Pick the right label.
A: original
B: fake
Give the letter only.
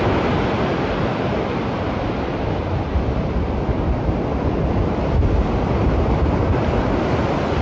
A